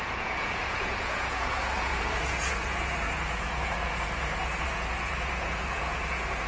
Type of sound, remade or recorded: remade